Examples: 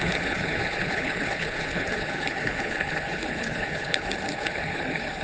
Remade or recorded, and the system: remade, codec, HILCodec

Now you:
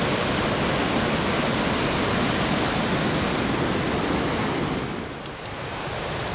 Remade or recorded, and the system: recorded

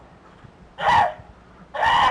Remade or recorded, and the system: recorded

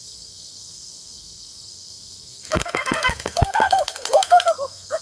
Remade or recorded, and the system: remade, codec, SNAC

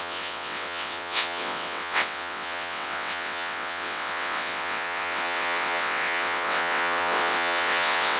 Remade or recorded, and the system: remade, vocoder, WaveNeXt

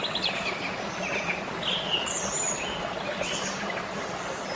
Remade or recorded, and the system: recorded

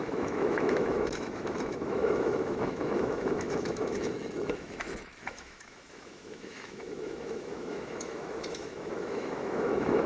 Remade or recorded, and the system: remade, autoencoder, DAC-VAE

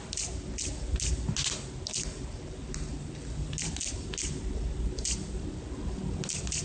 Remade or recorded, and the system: recorded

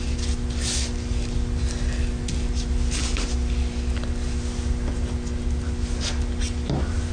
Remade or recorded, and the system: recorded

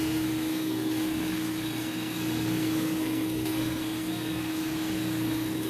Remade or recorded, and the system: remade, codec, SNAC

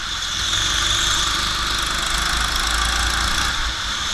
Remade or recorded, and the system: recorded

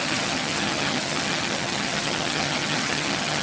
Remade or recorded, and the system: remade, vocoder, HiFi-GAN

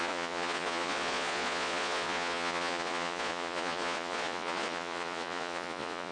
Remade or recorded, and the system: remade, vocoder, Vocos